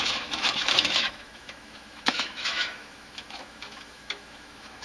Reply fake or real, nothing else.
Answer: fake